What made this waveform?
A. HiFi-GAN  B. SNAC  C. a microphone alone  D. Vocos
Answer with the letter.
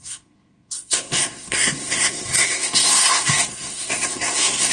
B